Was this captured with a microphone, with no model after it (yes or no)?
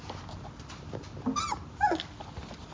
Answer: yes